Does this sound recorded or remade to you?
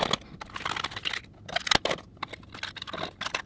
recorded